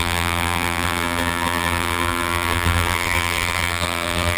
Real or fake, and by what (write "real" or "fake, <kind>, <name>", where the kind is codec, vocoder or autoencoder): fake, vocoder, BigVGAN v2